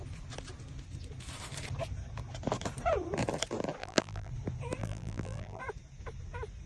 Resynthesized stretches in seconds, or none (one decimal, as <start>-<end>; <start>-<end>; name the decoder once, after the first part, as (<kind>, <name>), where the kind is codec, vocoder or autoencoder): 3.8-4.3 (vocoder, BigVGAN v2); 4.8-5.6